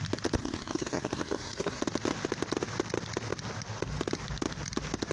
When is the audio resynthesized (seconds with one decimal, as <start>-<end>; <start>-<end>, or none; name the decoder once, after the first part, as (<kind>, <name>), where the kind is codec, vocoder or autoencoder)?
0.4-1.8 (codec, SNAC)